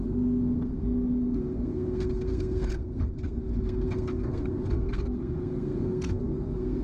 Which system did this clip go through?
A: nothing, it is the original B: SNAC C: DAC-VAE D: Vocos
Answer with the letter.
B